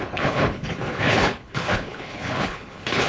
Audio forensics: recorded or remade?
remade